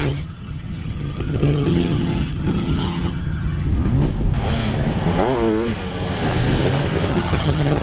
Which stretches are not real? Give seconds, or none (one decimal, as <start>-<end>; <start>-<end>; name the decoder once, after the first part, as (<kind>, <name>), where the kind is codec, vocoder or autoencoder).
0.0-3.7 (vocoder, HiFi-GAN); 7.1-7.8